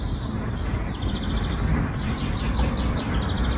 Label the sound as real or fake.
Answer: real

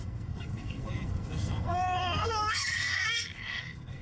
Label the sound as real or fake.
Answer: fake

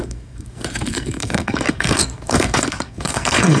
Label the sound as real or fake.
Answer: fake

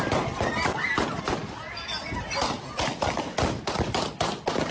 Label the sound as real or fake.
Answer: real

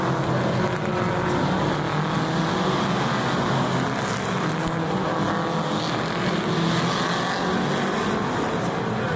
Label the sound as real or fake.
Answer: real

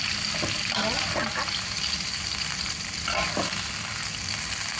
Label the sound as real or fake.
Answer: real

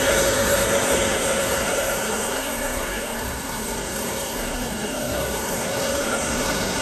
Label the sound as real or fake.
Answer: fake